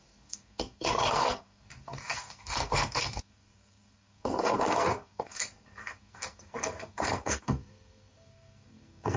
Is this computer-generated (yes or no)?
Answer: yes